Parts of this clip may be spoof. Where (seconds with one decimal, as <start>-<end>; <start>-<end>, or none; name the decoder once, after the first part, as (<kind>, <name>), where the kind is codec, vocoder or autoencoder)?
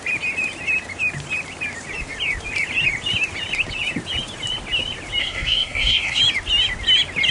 5.2-6.2 (codec, SNAC)